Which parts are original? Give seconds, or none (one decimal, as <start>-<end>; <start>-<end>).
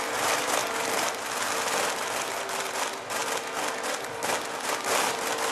0.0-5.5